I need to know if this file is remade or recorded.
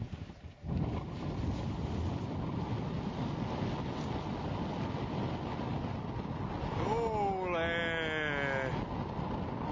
recorded